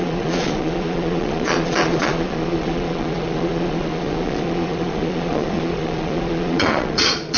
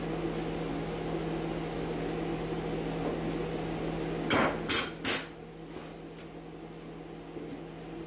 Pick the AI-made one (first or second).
first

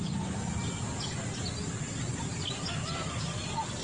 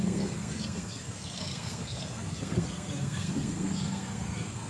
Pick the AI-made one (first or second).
second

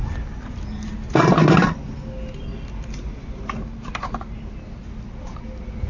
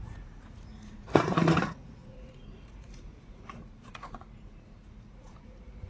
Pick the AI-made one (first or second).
second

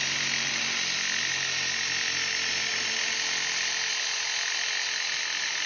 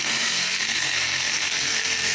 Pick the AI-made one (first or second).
second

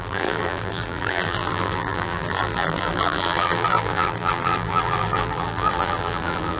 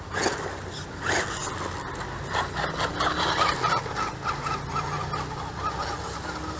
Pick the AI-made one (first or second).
first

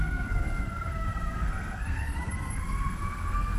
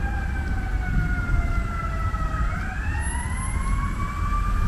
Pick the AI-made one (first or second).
first